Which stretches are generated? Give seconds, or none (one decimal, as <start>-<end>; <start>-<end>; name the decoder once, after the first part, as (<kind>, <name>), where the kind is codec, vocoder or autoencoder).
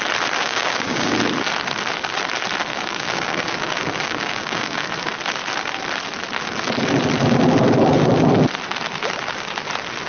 0.4-1.1 (codec, DAC); 2.7-4.8